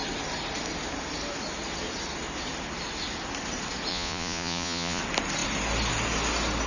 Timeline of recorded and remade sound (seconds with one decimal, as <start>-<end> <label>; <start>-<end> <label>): 0.0-3.9 recorded; 3.9-5.0 remade; 5.0-6.7 recorded